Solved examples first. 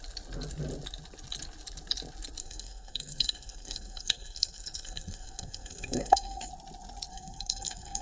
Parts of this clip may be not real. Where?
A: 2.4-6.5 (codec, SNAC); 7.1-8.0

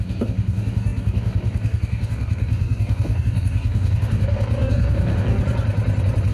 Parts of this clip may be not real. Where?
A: 0.0-5.4 (codec, DAC)

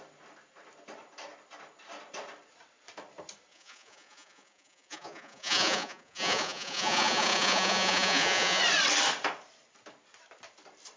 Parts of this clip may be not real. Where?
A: 3.5-8.6 (vocoder, Vocos)

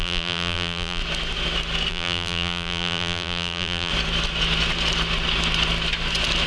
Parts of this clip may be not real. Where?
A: 0.0-1.0 (vocoder, BigVGAN v2); 1.9-3.9